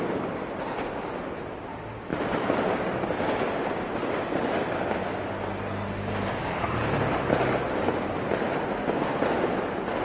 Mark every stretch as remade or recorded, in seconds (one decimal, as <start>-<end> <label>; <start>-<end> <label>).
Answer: 0.0-2.1 recorded; 2.1-2.9 remade; 2.9-10.0 recorded

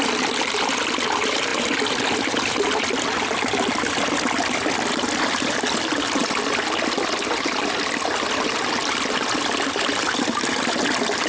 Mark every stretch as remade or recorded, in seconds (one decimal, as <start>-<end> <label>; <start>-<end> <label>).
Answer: 0.0-11.3 recorded

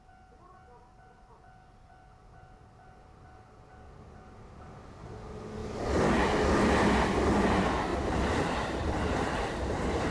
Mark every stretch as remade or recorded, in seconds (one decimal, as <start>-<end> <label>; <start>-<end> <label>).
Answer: 0.0-7.9 recorded; 7.9-10.1 remade

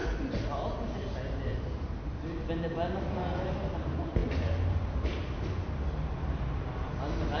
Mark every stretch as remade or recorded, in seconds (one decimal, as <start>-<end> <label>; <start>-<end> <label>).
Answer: 0.0-7.4 recorded

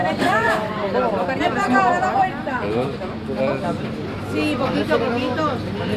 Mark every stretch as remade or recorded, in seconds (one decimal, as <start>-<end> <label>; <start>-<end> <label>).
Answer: 0.0-1.4 remade; 1.4-6.0 recorded

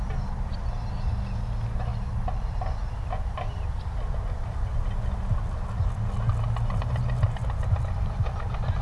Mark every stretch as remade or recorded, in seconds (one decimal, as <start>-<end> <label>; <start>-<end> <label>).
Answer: 0.0-8.8 recorded

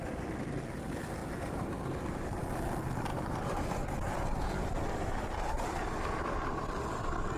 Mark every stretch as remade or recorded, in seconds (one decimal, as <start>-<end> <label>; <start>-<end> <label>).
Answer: 0.0-1.2 recorded; 1.2-2.4 remade; 2.4-3.1 recorded; 3.1-5.7 remade; 5.7-7.4 recorded